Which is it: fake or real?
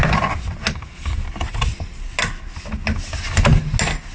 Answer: real